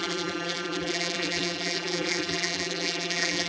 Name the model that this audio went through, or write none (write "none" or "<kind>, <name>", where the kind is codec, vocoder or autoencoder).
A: vocoder, BigVGAN v2